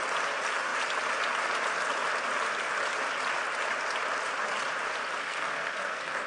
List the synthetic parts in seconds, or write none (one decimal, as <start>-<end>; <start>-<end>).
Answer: 5.2-6.3